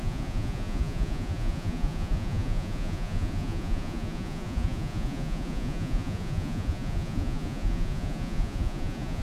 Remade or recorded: remade